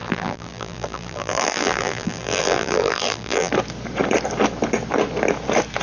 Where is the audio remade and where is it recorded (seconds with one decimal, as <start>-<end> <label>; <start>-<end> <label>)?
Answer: 0.0-3.5 remade; 3.5-5.8 recorded